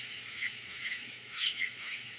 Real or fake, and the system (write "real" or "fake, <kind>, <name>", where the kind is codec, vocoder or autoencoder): fake, autoencoder, DAC-VAE